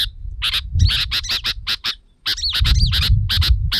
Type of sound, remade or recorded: recorded